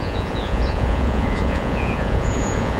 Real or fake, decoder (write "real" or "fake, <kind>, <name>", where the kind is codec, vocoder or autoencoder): fake, vocoder, Vocos